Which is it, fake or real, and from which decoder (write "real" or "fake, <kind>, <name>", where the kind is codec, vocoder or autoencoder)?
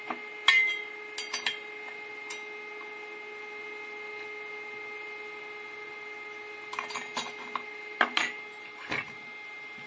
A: real